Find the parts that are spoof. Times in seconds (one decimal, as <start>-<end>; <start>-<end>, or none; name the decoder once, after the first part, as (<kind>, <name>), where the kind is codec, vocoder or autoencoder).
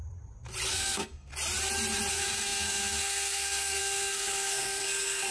0.7-1.3 (codec, SNAC); 2.1-5.3